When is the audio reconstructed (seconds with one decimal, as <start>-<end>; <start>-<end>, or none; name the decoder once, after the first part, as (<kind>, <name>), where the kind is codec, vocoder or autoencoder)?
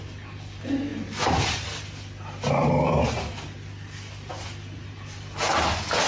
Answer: none